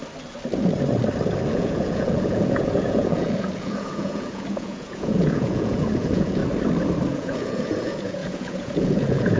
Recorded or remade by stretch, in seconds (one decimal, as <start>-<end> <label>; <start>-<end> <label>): 0.0-1.5 recorded; 1.5-6.4 remade; 6.4-7.1 recorded; 7.1-9.4 remade